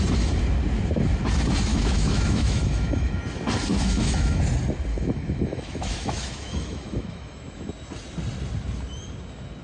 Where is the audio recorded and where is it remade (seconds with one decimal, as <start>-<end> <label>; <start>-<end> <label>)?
0.0-1.7 recorded; 1.7-3.2 remade; 3.2-3.7 recorded; 3.7-4.4 remade; 4.4-4.9 recorded; 4.9-7.7 remade; 7.7-9.6 recorded